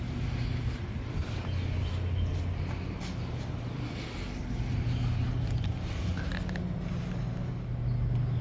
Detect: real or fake real